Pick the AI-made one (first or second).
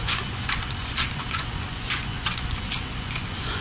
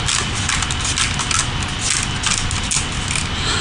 first